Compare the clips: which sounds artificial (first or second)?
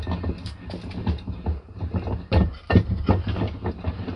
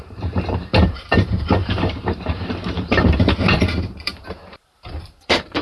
second